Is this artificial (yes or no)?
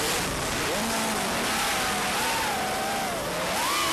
no